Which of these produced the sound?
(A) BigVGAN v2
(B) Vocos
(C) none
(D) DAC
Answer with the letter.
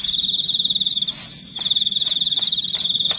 C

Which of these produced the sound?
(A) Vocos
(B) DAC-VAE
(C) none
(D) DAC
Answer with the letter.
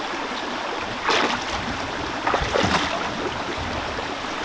C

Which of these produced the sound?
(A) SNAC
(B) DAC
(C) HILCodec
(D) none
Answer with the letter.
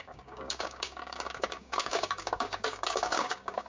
B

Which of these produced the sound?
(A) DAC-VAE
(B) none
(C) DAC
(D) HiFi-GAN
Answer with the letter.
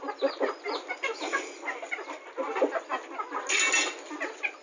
B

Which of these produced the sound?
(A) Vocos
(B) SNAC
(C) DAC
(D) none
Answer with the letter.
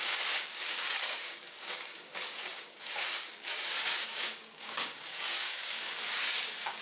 C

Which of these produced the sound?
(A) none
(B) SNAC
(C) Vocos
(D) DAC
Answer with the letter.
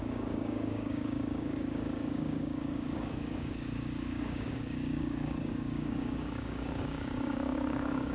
D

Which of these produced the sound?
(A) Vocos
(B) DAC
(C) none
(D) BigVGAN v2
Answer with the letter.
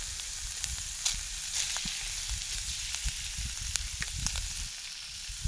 C